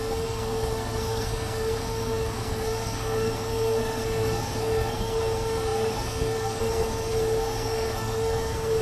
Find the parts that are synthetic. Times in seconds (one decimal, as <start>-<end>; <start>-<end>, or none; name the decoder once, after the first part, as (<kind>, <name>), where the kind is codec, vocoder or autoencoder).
0.0-8.8 (codec, SNAC)